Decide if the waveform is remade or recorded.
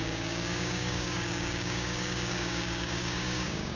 remade